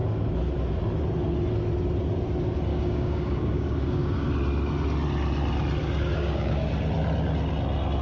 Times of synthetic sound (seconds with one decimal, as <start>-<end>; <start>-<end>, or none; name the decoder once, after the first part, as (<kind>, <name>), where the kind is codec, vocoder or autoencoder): 2.7-4.3 (codec, DAC); 5.8-6.7